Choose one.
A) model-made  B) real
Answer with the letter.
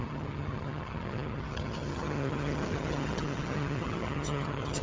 A